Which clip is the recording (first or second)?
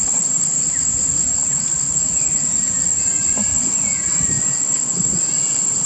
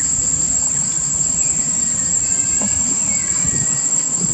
first